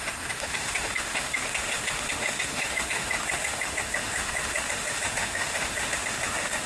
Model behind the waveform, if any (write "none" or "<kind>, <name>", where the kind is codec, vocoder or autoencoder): autoencoder, DAC-VAE